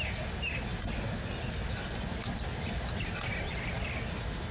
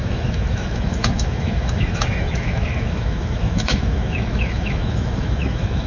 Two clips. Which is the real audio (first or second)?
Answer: first